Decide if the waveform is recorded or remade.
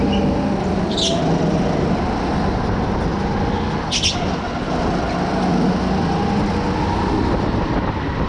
recorded